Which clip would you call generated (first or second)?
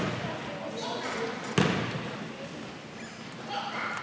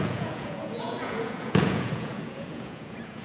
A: second